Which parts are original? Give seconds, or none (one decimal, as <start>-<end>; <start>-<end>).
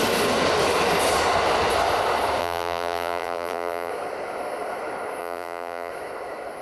0.0-2.4; 3.9-5.2; 5.9-6.6